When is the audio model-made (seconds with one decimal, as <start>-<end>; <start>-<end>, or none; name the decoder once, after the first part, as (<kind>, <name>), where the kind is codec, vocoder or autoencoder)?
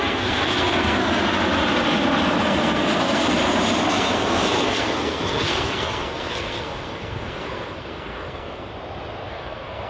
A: 0.0-1.0 (codec, SNAC); 2.4-3.4; 3.9-8.7; 9.3-9.9